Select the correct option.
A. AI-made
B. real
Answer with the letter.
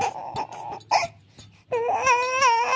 B